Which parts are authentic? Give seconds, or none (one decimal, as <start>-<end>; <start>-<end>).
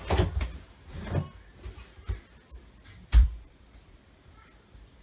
0.0-3.1; 4.3-5.0